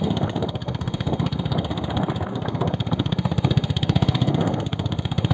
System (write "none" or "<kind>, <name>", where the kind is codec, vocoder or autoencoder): codec, SNAC